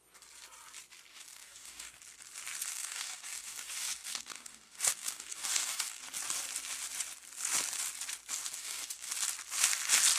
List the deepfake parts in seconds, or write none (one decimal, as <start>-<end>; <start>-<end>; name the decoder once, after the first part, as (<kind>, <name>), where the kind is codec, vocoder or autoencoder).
1.1-2.0 (codec, DAC); 2.7-6.0; 8.6-9.1